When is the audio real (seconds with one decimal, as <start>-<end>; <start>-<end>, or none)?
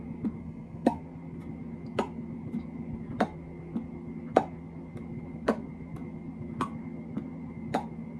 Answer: 0.0-0.4; 1.0-8.2